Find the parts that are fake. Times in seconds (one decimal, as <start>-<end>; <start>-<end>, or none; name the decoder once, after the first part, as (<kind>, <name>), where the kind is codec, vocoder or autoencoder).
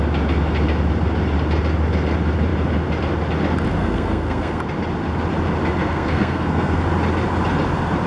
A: 3.8-4.6 (codec, SNAC); 5.8-6.8